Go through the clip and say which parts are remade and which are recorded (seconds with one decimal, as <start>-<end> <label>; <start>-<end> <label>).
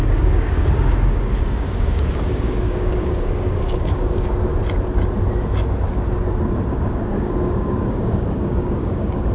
0.0-4.5 remade; 4.5-6.7 recorded; 6.7-9.3 remade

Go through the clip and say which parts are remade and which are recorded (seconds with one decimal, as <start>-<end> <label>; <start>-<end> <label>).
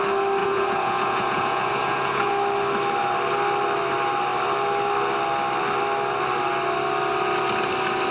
0.0-0.4 recorded; 0.4-2.3 remade; 2.3-8.1 recorded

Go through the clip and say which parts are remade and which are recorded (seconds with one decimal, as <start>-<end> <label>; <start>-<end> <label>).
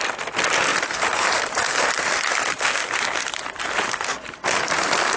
0.0-5.2 recorded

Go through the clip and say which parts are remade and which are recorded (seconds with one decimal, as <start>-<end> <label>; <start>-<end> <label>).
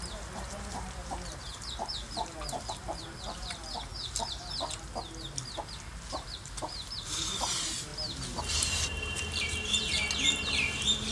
0.0-3.9 remade; 3.9-6.1 recorded; 6.1-7.9 remade; 7.9-8.5 recorded; 8.5-11.1 remade